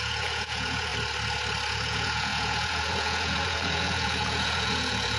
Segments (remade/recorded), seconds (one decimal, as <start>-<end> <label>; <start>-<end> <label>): 0.0-0.9 remade; 0.9-1.7 recorded; 1.7-5.2 remade